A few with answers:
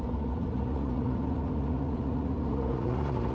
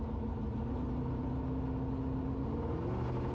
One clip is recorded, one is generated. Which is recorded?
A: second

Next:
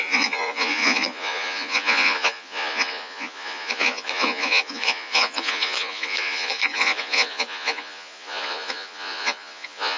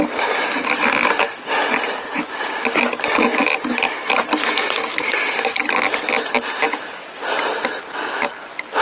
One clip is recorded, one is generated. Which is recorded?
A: second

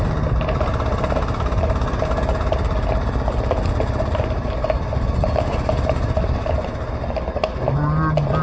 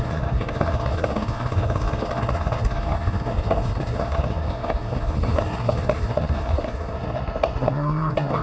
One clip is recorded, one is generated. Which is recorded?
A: first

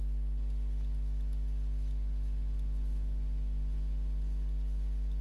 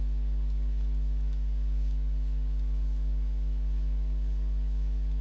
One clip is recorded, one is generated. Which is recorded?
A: first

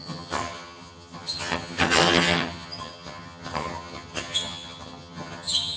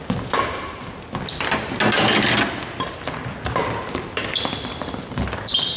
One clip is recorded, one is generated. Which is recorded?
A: second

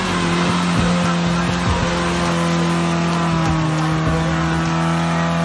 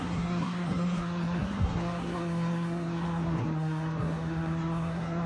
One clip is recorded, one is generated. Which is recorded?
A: first